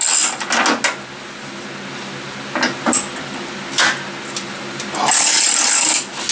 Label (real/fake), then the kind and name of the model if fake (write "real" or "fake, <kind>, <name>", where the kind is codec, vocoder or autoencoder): real